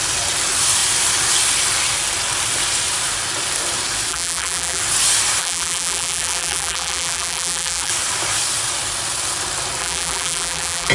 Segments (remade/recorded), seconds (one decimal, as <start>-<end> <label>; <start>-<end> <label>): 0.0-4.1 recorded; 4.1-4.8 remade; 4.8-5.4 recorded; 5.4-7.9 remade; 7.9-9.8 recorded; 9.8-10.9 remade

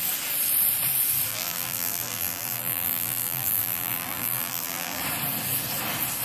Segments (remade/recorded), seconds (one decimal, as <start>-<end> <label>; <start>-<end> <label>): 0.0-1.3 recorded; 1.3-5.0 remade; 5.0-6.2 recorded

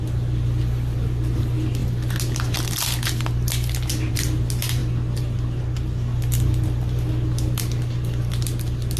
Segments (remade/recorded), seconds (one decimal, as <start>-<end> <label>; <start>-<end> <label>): 0.0-9.0 recorded

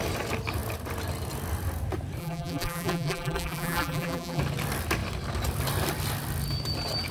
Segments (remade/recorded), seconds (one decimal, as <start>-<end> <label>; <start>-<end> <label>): 0.0-2.2 recorded; 2.2-4.4 remade; 4.4-7.1 recorded